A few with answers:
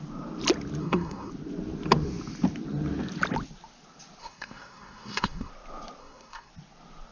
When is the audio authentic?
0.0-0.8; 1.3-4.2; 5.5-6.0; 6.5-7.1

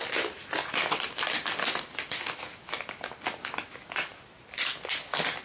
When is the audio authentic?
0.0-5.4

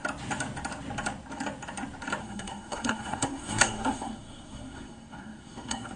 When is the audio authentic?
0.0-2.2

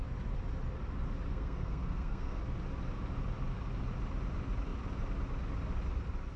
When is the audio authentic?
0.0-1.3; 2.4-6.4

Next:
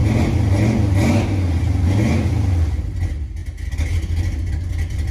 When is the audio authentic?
0.0-5.1

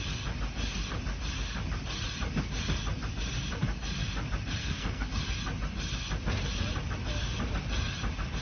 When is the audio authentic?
0.0-4.6; 5.1-8.4